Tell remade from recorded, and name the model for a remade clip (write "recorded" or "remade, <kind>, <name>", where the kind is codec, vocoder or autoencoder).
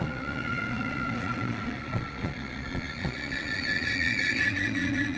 remade, vocoder, Vocos